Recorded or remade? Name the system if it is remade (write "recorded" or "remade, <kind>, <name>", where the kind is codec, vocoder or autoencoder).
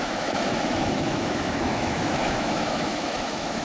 remade, autoencoder, DAC-VAE